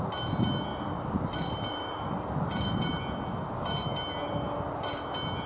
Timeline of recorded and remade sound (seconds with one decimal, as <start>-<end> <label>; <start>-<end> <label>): 0.0-0.7 recorded; 0.7-3.0 remade; 3.0-5.5 recorded

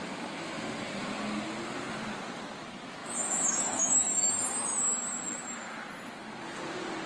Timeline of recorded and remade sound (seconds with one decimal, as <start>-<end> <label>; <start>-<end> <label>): 0.0-3.0 recorded; 3.0-4.3 remade; 4.3-7.1 recorded

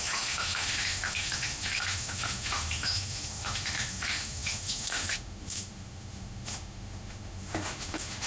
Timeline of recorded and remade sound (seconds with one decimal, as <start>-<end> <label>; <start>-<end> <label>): 0.0-8.3 remade

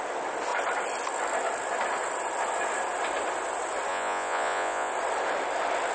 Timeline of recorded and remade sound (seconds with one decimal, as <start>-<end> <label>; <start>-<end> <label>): 0.0-3.9 recorded; 3.9-4.9 remade; 4.9-5.9 recorded

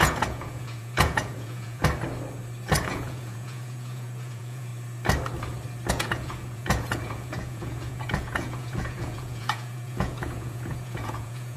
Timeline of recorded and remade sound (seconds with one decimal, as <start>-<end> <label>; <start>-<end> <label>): 0.0-1.8 remade; 1.8-2.8 recorded; 2.8-4.7 remade; 4.7-5.9 recorded; 5.9-11.6 remade

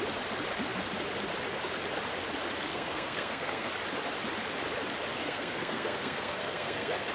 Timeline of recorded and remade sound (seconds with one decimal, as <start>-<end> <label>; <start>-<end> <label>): 0.0-2.7 recorded; 2.7-3.7 remade; 3.7-5.2 recorded; 5.2-7.1 remade